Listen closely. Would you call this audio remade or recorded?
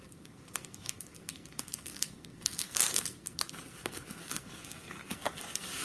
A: remade